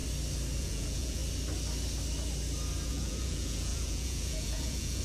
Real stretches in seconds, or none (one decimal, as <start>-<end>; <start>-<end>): 0.0-0.6; 1.2-2.9